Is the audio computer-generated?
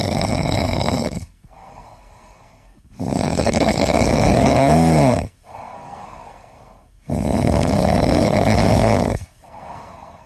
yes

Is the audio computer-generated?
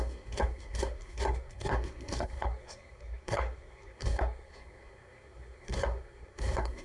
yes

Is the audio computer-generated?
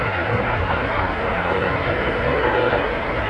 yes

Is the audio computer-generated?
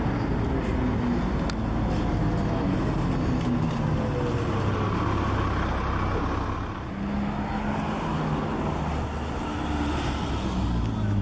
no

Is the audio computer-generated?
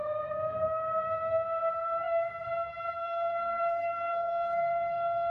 yes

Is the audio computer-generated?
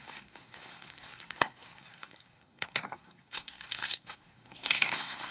yes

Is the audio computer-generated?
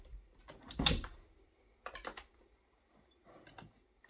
no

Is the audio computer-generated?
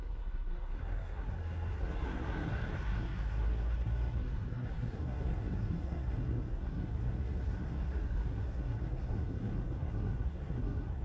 yes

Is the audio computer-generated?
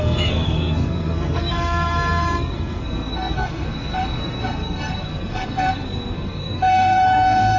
yes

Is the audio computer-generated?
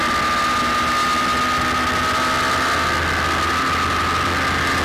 no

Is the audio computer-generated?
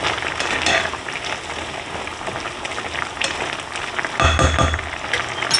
no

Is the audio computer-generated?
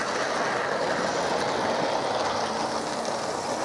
no